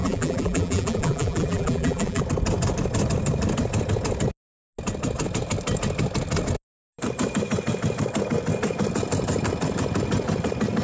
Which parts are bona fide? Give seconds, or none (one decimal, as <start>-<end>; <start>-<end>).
2.2-10.8